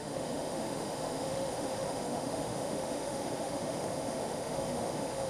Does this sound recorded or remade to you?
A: remade